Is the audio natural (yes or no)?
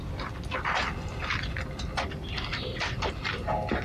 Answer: yes